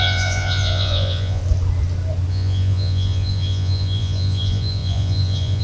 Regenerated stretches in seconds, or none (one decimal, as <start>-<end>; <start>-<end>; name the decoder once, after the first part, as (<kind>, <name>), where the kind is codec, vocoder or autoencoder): 0.0-1.4 (vocoder, Vocos); 2.3-5.6